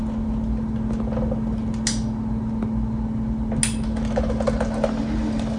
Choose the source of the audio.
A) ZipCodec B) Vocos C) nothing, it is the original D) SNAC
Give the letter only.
C